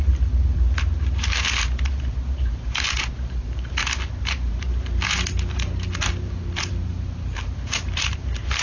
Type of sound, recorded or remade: remade